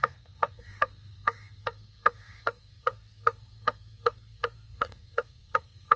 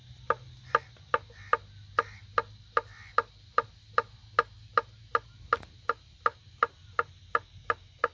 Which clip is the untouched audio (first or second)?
second